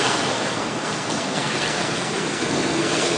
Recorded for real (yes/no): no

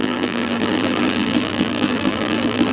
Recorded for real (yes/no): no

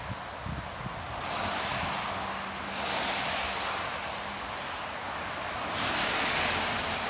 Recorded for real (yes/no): yes